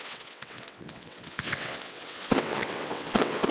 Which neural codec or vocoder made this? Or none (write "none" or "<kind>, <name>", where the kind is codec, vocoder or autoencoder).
vocoder, WaveNeXt